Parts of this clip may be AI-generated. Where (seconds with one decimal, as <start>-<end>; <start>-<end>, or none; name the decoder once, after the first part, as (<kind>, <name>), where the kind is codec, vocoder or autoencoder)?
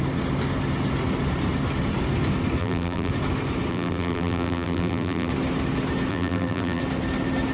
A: 2.6-3.1 (vocoder, BigVGAN v2); 3.7-5.3; 6.1-6.8